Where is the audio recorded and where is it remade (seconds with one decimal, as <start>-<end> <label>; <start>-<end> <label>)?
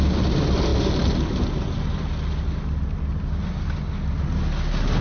0.0-5.0 recorded